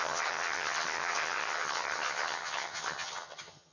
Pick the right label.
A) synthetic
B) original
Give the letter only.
A